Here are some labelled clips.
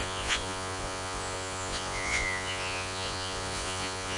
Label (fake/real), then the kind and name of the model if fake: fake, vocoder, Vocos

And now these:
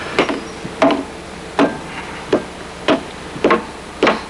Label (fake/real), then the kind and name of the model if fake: real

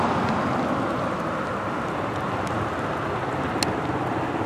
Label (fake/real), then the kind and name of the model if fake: real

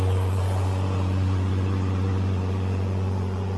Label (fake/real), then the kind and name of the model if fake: fake, vocoder, Vocos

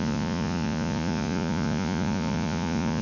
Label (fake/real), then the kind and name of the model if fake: fake, vocoder, Vocos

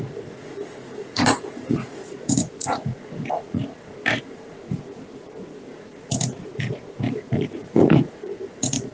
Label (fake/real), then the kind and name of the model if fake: fake, vocoder, Vocos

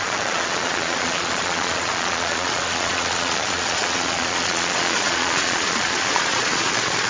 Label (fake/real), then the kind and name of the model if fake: fake, vocoder, Vocos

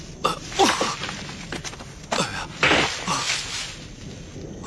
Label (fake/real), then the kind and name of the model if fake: real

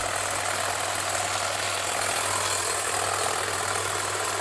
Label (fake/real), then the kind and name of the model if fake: real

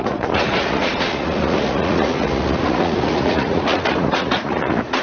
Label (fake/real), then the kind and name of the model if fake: fake, vocoder, Vocos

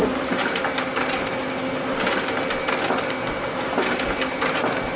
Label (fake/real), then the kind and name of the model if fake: real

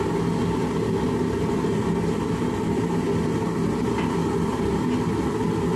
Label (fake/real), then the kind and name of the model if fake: real